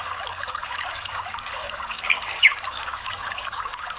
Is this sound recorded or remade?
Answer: remade